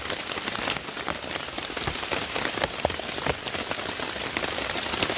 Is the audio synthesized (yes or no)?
no